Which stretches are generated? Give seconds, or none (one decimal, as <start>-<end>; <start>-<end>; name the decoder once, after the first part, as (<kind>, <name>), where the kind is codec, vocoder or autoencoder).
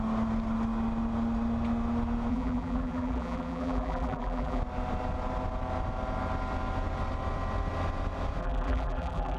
2.3-4.6 (vocoder, BigVGAN v2); 8.4-9.4